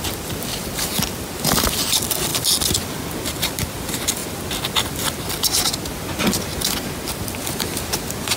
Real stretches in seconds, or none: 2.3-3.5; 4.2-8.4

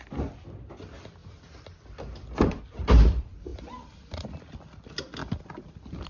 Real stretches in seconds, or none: 0.0-1.2; 2.6-3.5; 4.8-5.2

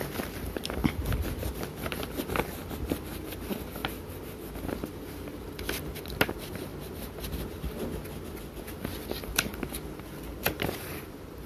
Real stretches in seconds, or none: 3.8-6.3; 6.7-10.3

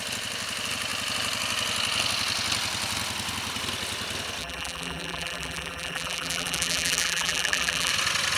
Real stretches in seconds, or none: 0.0-4.4; 7.9-8.4

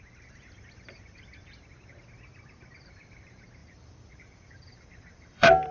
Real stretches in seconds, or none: 0.0-3.6

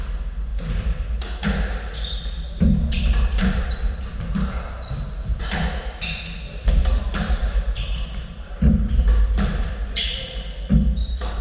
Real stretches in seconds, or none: 0.0-0.5; 1.2-3.4; 4.0-6.8; 8.9-11.4

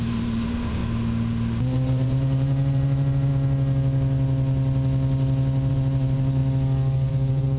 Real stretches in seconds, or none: 0.8-1.6; 3.3-5.7; 6.4-7.1